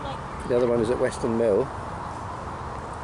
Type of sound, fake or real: real